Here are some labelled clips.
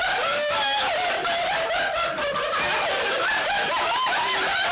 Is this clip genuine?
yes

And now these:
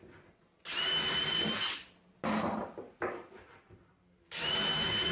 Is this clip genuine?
yes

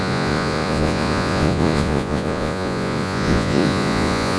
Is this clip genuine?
no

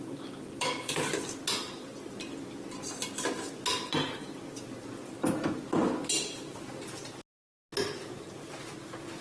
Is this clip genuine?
yes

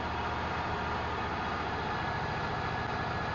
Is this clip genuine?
yes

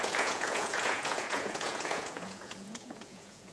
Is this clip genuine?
no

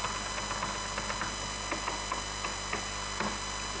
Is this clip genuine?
yes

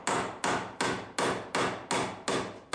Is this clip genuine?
yes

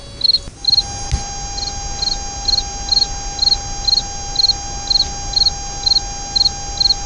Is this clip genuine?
yes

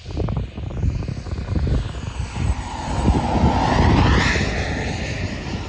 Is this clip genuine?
yes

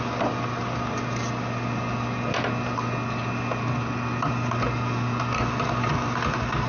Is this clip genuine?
yes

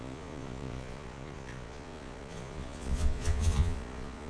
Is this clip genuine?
no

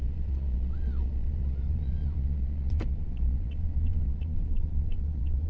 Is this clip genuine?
no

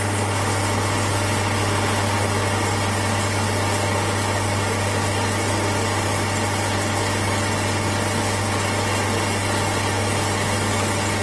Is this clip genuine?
yes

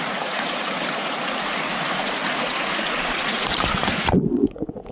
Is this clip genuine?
no